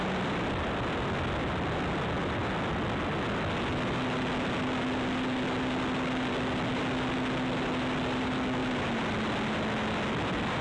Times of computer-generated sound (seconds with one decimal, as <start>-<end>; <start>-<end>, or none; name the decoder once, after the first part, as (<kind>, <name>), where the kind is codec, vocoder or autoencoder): none

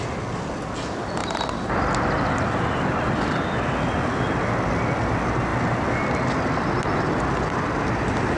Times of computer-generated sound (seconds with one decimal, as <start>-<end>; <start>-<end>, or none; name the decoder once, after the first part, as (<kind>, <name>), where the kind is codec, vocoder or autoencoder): none

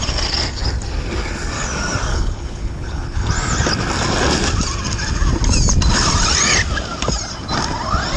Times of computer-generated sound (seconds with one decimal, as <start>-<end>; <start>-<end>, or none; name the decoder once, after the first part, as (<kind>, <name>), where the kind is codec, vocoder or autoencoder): 2.1-3.3 (codec, HILCodec)

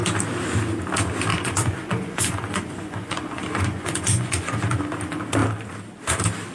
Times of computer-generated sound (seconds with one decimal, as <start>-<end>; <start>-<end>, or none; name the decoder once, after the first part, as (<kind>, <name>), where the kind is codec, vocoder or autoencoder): 1.3-4.8 (vocoder, Vocos)

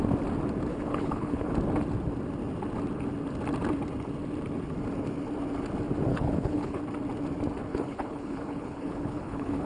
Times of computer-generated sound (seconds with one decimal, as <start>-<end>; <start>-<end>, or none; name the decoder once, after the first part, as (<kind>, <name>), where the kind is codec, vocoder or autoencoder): 0.7-1.5 (codec, HILCodec); 6.1-6.8; 7.7-9.7

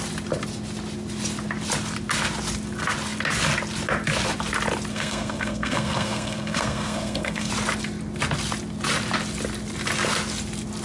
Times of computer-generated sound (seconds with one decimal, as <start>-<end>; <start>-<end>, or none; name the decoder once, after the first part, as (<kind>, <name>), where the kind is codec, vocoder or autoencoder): 4.9-7.5 (codec, SNAC)

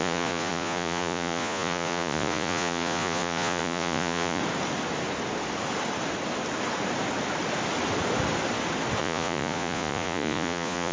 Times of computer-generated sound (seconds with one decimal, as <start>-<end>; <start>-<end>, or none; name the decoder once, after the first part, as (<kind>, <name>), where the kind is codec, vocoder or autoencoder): 0.0-4.4 (vocoder, Vocos); 9.0-10.9